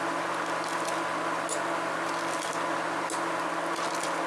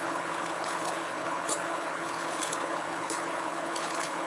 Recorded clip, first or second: first